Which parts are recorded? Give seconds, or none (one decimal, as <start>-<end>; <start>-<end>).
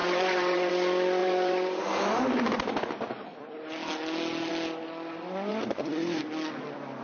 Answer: 0.7-1.2; 1.8-5.5; 6.2-7.0